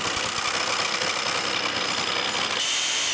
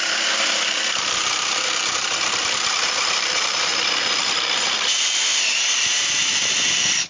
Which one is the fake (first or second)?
second